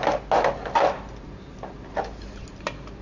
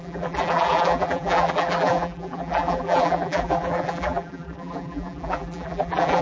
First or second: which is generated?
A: second